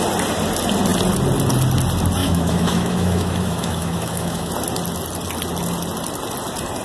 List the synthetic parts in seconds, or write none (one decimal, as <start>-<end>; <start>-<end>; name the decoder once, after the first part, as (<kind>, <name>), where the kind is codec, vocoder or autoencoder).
2.2-4.5 (autoencoder, DAC-VAE)